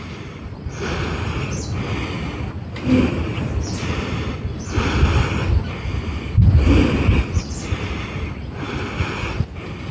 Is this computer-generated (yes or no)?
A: no